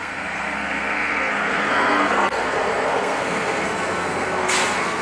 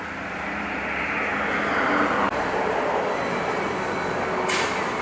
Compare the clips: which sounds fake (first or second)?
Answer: first